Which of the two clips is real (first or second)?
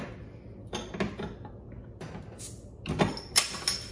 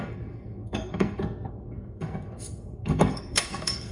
first